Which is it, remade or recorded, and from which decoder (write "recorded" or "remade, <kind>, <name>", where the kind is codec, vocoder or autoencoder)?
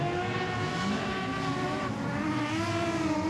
recorded